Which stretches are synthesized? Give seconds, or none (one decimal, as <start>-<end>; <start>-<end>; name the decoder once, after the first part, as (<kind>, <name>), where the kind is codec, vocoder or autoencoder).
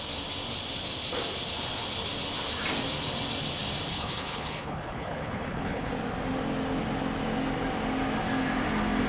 3.9-5.9 (codec, HILCodec)